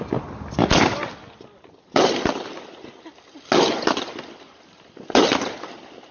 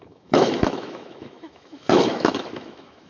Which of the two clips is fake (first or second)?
second